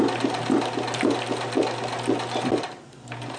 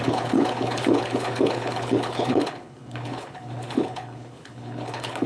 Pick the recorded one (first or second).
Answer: first